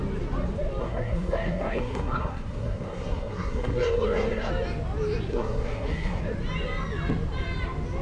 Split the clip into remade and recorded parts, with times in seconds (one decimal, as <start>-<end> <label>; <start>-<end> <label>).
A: 0.0-0.8 recorded; 0.8-4.5 remade; 4.5-5.3 recorded; 5.3-6.2 remade; 6.2-8.0 recorded